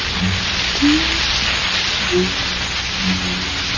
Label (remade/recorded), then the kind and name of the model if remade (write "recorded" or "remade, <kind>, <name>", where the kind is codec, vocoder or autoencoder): recorded